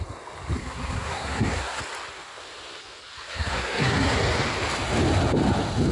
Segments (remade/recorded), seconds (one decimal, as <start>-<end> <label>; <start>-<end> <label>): 0.0-0.6 recorded; 0.6-1.8 remade; 1.8-3.3 recorded; 3.3-4.2 remade; 4.2-5.9 recorded